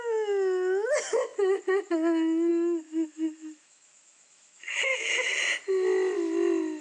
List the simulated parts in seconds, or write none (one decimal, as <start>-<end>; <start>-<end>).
2.5-5.1